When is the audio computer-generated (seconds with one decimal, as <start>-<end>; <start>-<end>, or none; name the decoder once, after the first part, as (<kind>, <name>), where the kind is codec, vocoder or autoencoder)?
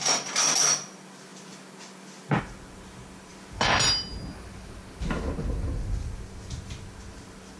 none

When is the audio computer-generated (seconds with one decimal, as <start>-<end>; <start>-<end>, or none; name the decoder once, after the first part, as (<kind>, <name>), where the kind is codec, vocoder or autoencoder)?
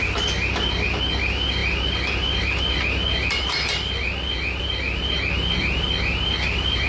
none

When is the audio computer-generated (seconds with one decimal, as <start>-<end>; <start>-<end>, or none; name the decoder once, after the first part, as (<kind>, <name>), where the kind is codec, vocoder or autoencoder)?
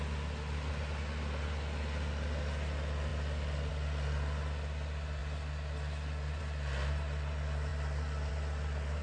none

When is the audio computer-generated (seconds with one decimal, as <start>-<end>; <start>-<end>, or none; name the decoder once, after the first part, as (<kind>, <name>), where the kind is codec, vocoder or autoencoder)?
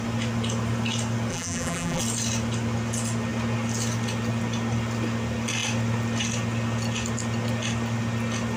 1.3-2.0 (vocoder, BigVGAN v2)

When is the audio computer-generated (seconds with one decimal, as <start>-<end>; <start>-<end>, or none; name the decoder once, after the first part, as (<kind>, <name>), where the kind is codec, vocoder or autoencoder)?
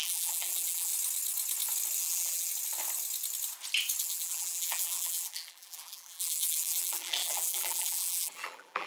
0.0-0.9 (vocoder, BigVGAN v2); 2.0-2.5; 4.0-8.9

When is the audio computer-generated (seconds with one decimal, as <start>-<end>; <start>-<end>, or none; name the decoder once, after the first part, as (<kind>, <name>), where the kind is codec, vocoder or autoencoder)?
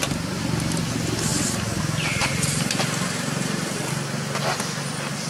2.2-3.9 (vocoder, BigVGAN v2)